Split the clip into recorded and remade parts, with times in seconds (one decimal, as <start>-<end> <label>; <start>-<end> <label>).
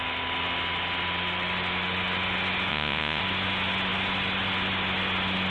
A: 0.0-2.7 recorded; 2.7-3.2 remade; 3.2-5.5 recorded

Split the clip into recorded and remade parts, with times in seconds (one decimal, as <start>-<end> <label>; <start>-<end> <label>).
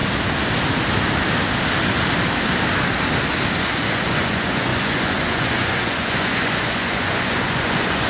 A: 0.0-3.6 recorded; 3.6-8.1 remade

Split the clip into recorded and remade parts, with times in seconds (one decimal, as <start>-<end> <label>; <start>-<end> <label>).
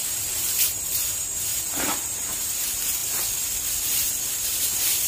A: 0.0-3.0 remade; 3.0-4.2 recorded; 4.2-5.1 remade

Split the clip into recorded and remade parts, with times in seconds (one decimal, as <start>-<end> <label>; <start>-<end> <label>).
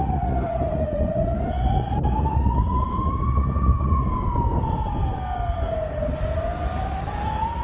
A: 0.0-4.1 remade; 4.1-7.6 recorded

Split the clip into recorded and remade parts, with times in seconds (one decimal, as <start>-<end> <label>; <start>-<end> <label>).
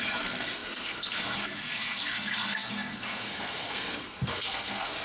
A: 0.0-5.0 remade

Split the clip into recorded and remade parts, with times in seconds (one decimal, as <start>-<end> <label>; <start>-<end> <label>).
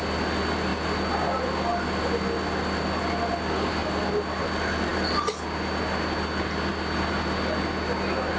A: 0.0-8.4 recorded